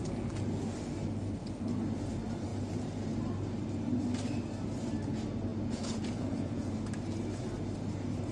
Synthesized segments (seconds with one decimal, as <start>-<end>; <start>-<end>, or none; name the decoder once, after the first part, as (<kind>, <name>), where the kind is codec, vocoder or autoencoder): 5.5-6.7 (vocoder, Vocos)